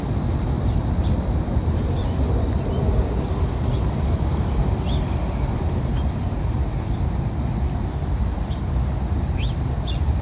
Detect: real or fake real